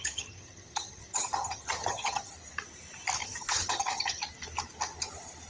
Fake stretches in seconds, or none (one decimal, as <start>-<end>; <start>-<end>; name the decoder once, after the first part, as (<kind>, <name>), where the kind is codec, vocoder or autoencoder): 0.0-2.3 (vocoder, HiFi-GAN); 3.2-4.2